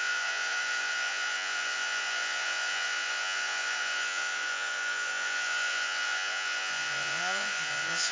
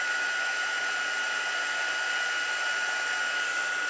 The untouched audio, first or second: second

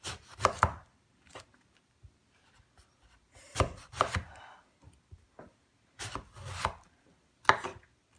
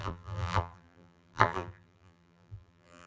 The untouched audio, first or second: first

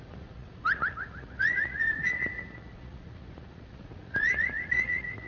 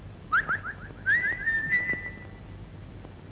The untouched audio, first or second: second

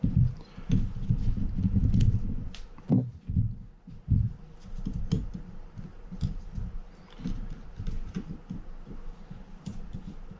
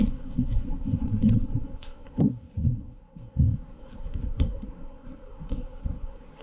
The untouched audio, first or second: first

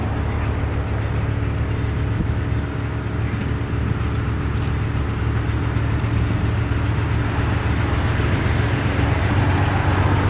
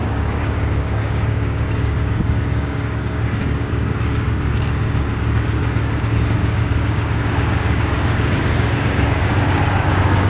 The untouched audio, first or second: first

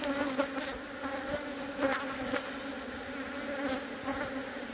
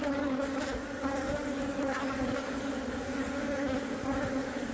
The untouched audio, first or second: first